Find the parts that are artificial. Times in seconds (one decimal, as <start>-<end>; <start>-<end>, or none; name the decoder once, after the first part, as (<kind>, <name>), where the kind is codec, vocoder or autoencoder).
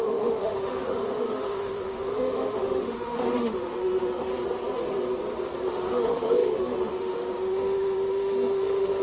0.0-4.3 (autoencoder, DAC-VAE); 5.7-9.0